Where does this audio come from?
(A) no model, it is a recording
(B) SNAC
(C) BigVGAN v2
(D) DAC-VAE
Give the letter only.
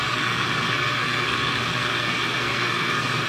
B